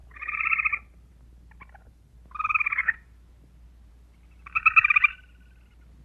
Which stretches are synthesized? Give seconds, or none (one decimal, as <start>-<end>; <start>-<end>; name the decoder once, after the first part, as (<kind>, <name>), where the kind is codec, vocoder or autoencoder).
none